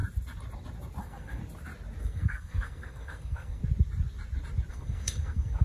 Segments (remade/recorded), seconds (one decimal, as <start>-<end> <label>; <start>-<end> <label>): 0.0-1.0 recorded; 1.0-1.4 remade; 1.4-2.0 recorded; 2.0-3.6 remade; 3.6-4.7 recorded; 4.7-5.6 remade